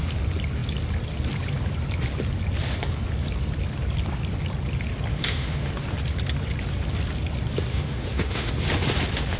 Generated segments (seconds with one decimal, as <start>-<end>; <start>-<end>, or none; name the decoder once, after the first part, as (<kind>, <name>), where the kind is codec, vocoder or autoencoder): 5.1-5.7 (autoencoder, DAC-VAE); 7.7-8.5